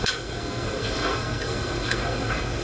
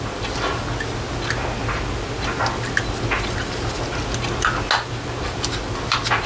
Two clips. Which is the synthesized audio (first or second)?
first